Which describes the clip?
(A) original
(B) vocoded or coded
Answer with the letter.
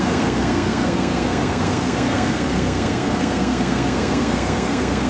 B